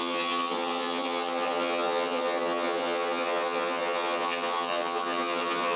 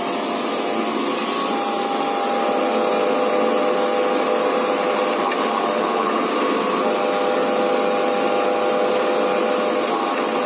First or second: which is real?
second